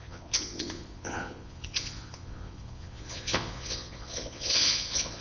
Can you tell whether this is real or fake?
fake